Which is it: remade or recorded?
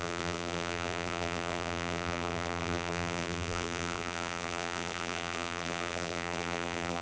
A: remade